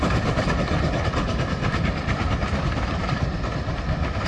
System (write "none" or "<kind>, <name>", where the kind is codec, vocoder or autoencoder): vocoder, BigVGAN v2